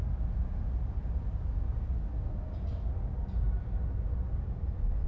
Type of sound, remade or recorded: recorded